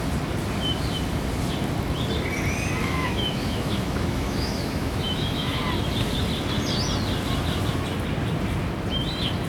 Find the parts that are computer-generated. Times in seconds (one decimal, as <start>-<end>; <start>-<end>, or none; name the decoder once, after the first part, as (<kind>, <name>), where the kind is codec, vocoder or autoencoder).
2.8-5.6 (autoencoder, DAC-VAE)